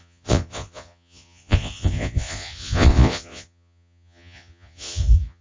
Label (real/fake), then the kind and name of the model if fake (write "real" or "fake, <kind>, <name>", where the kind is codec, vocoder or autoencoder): fake, vocoder, Vocos